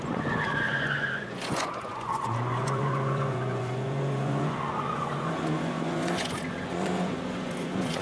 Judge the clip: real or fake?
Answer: fake